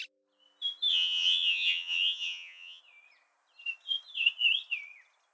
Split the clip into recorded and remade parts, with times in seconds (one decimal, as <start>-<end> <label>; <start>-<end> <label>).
0.0-0.9 recorded; 0.9-2.8 remade; 2.8-5.3 recorded